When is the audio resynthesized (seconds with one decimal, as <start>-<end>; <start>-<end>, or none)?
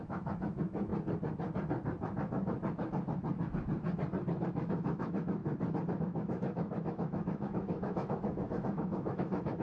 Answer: 0.0-0.9; 4.4-5.4; 6.0-9.6